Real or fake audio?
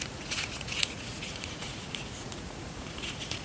fake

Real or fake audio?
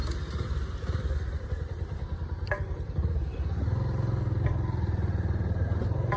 real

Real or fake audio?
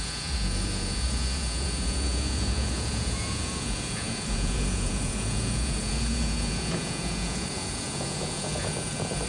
fake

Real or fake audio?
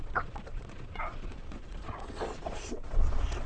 fake